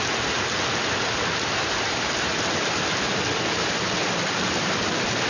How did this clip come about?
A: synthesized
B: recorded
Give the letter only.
B